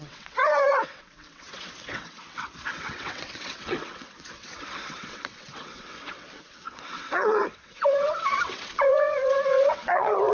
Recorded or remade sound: remade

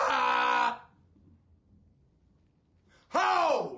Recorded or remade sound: recorded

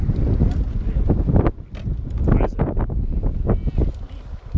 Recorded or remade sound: recorded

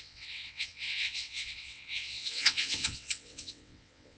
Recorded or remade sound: remade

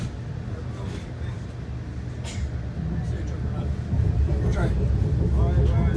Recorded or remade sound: recorded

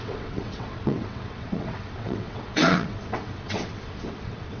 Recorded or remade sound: remade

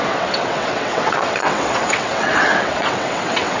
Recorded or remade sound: remade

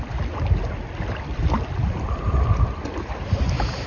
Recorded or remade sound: recorded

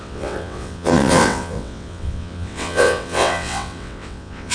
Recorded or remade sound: remade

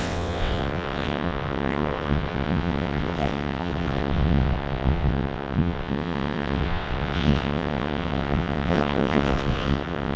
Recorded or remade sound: remade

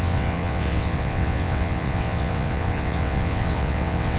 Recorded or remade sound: remade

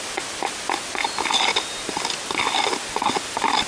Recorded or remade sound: recorded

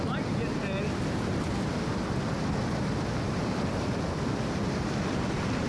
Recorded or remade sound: recorded